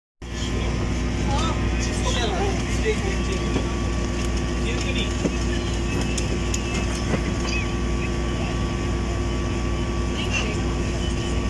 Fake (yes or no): no